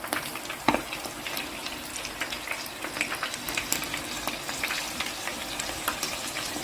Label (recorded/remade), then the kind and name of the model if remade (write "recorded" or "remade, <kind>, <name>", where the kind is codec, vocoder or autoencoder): recorded